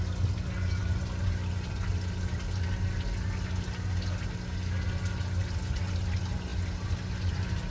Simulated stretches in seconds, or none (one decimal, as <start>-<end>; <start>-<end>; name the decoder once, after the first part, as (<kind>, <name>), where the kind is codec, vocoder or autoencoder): none